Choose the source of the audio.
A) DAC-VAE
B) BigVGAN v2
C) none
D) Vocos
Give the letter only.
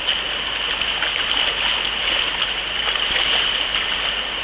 C